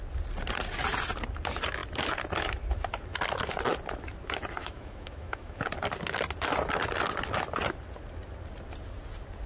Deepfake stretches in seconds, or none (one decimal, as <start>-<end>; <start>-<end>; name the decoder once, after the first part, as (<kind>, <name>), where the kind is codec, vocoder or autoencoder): 4.6-5.6 (autoencoder, DAC-VAE)